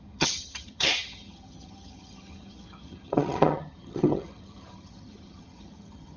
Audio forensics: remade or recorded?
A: remade